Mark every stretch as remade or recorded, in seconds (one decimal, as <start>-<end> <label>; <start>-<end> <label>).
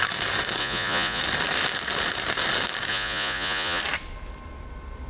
0.0-0.6 recorded; 0.6-1.2 remade; 1.2-2.9 recorded; 2.9-3.8 remade; 3.8-5.1 recorded